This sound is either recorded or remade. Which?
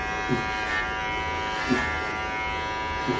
recorded